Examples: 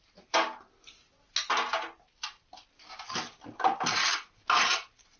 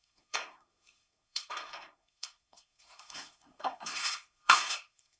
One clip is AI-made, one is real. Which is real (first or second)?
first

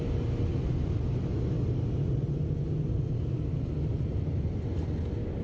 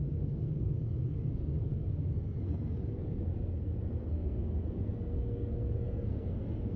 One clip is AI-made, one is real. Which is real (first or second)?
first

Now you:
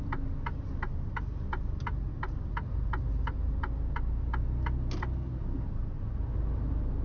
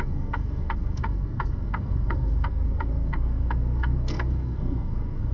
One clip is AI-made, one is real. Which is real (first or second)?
first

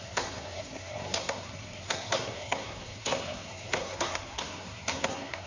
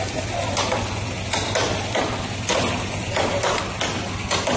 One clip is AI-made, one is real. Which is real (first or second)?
second